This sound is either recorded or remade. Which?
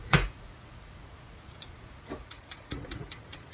remade